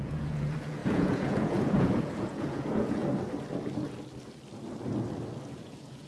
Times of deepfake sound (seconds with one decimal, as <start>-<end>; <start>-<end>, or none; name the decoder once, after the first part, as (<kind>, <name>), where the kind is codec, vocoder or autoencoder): 0.0-3.0 (vocoder, Vocos); 5.5-6.1